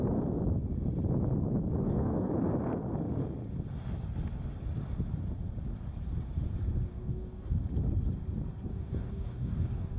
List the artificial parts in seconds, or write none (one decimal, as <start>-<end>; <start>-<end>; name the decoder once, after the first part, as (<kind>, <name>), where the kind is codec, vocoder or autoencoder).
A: 1.8-2.3 (codec, DAC); 6.9-7.6; 8.7-10.0